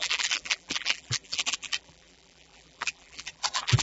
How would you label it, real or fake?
fake